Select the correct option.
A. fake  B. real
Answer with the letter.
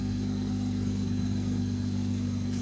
A